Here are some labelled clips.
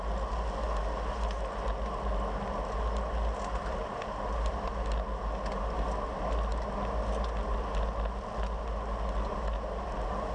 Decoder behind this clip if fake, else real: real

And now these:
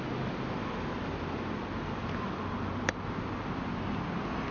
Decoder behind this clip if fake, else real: real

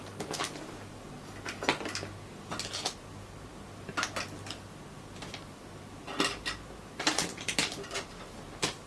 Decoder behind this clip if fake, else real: real